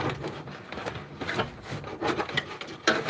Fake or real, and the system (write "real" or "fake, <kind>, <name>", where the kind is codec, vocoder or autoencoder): real